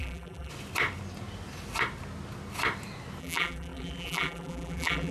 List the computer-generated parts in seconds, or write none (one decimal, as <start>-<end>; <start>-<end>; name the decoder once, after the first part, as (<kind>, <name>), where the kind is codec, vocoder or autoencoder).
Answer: 0.0-0.5 (vocoder, BigVGAN v2); 3.2-5.1